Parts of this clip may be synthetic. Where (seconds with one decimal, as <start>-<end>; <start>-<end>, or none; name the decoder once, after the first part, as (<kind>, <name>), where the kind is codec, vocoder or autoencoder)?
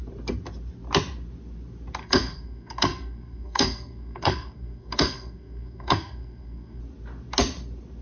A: 2.0-6.8 (codec, SNAC)